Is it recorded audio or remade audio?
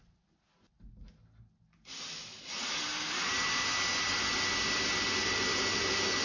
recorded